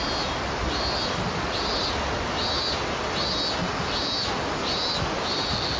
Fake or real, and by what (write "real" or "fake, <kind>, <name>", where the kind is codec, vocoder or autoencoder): real